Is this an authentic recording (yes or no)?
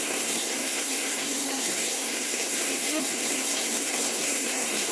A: no